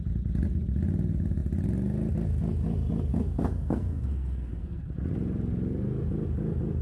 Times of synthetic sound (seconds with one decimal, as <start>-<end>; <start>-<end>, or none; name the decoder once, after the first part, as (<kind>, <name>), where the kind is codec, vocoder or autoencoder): 3.1-4.9 (codec, SNAC)